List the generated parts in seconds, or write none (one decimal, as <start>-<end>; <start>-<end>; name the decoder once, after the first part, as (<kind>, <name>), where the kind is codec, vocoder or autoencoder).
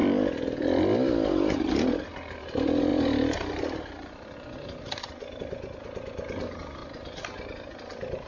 0.0-2.1 (vocoder, BigVGAN v2); 2.9-5.8; 6.8-8.3